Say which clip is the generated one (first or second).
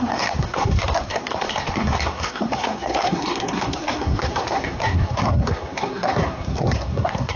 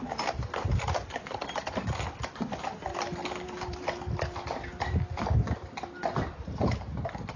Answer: first